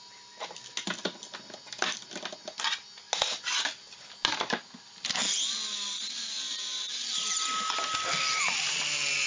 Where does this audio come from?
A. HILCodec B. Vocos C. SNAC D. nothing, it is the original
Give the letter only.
D